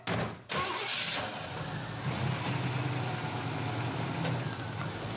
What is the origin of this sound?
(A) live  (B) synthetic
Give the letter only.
A